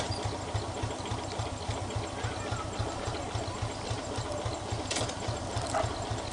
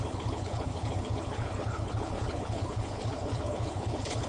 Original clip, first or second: first